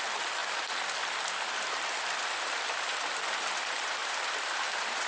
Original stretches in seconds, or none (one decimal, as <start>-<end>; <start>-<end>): none